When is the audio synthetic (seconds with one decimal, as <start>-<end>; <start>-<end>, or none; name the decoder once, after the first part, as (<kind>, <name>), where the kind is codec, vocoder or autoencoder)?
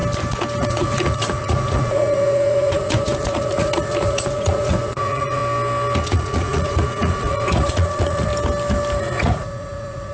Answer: 0.6-5.4 (vocoder, Vocos); 6.1-8.3; 9.0-10.1